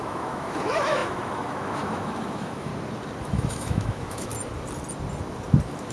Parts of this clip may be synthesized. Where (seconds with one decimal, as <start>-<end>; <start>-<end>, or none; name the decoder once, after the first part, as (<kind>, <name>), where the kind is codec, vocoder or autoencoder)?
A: 0.0-2.7 (autoencoder, DAC-VAE); 3.2-4.3

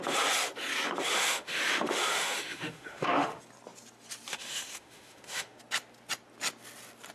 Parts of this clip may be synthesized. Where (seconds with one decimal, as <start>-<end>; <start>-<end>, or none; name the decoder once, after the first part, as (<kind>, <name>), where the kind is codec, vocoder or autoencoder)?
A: 1.1-3.4 (autoencoder, DAC-VAE); 4.3-5.6

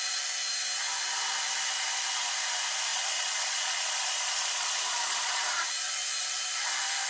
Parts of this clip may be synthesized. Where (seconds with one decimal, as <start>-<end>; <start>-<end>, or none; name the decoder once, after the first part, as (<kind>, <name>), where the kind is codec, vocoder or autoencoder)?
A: 2.9-5.7 (vocoder, Vocos)

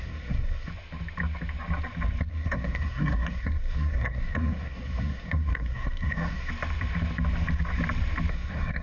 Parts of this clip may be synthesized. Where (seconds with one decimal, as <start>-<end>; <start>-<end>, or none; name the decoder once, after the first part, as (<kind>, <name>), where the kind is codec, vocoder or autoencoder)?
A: 0.0-0.7 (codec, SNAC); 2.3-6.5; 8.3-8.8

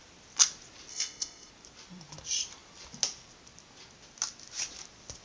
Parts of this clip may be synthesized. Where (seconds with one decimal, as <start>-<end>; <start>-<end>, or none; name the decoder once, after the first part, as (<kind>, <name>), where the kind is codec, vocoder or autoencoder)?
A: 0.9-1.5 (codec, SNAC)

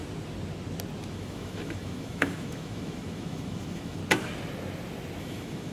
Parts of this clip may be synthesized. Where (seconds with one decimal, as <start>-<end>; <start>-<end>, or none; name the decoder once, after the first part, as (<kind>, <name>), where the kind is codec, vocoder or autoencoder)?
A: 1.1-4.0 (autoencoder, DAC-VAE); 5.2-5.7

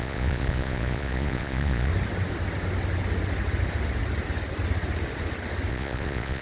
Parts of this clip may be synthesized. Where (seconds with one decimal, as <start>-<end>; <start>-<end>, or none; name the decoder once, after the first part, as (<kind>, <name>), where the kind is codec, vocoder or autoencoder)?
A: 0.0-1.9 (vocoder, Vocos); 5.7-6.4